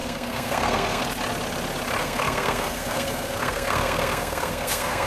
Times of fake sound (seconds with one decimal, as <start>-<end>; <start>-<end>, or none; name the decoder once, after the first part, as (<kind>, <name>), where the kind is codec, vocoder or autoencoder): 0.0-1.0 (codec, SNAC); 2.0-5.1